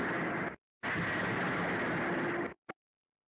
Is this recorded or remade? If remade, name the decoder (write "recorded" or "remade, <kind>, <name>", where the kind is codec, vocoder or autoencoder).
recorded